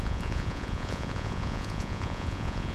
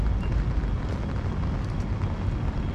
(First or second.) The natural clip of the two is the second